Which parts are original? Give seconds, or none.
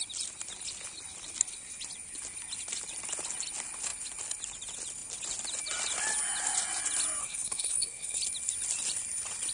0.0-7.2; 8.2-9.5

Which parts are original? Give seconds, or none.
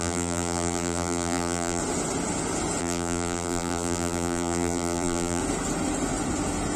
1.8-2.8; 5.4-6.8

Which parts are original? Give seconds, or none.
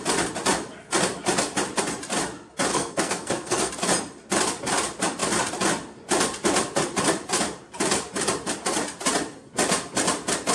0.0-2.7; 3.7-10.5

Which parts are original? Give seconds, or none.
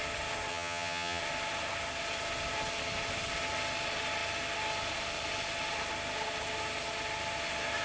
0.0-0.5; 1.2-7.8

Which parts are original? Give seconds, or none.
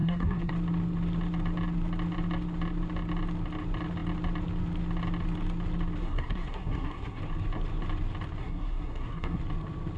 0.5-6.0; 7.2-8.4; 9.4-10.0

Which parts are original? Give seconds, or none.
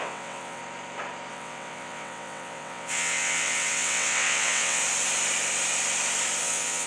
0.6-1.3; 4.8-6.4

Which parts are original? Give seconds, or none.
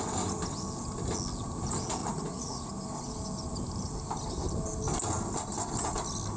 0.0-2.0; 2.7-6.4